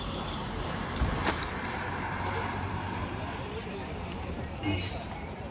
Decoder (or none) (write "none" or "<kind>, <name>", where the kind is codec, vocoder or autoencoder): vocoder, BigVGAN v2